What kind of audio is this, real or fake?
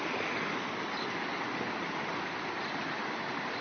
real